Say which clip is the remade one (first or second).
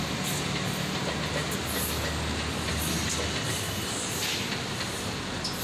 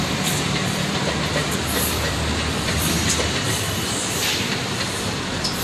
second